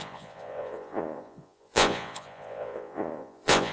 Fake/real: fake